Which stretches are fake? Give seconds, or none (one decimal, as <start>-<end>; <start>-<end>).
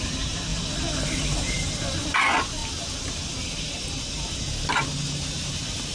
none